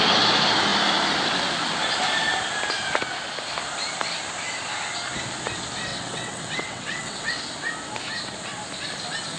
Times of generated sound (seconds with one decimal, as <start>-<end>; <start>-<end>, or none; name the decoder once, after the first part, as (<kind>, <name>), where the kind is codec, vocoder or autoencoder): 5.9-7.4 (vocoder, WaveNeXt)